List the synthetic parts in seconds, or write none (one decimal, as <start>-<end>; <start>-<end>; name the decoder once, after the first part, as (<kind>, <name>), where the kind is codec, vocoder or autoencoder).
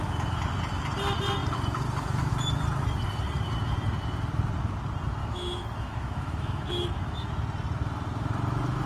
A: 5.2-7.3 (autoencoder, DAC-VAE)